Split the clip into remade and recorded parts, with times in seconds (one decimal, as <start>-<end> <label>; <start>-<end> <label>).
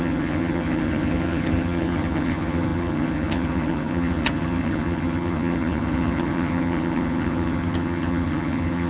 0.0-8.9 remade